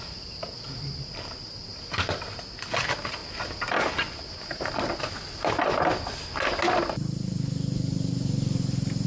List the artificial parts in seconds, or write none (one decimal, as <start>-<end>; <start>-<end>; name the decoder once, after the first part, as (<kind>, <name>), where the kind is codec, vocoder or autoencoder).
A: none